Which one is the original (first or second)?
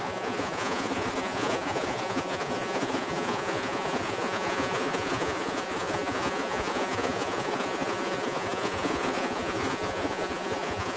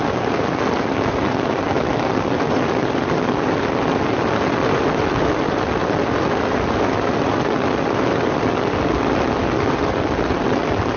second